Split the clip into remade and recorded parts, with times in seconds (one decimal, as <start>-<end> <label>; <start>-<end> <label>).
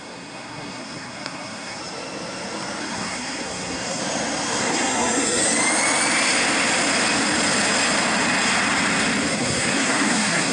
0.0-1.8 remade; 1.8-2.8 recorded; 2.8-4.0 remade; 4.0-4.6 recorded; 4.6-5.4 remade; 5.4-9.3 recorded; 9.3-10.5 remade